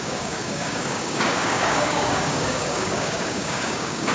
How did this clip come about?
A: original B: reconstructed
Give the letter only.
B